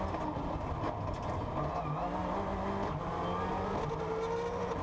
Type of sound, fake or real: real